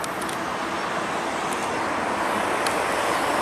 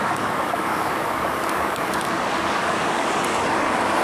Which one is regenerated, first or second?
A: second